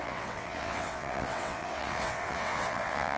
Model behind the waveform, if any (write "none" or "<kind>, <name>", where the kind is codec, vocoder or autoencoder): vocoder, WaveNeXt